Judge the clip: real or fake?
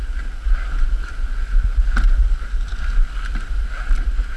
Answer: real